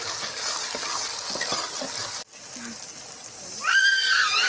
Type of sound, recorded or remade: recorded